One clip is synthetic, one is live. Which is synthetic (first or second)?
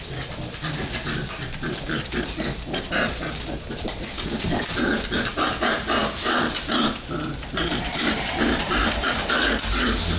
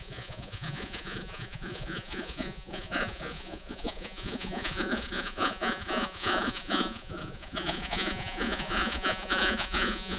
second